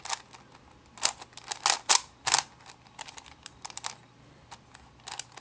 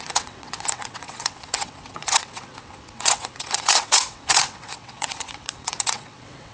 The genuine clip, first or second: first